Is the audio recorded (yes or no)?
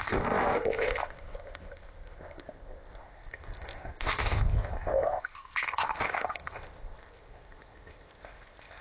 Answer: no